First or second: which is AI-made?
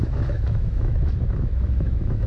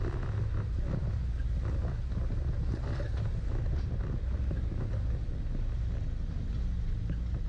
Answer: first